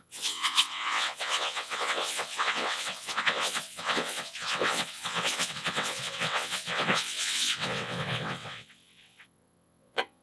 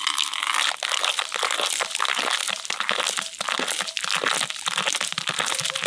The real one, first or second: second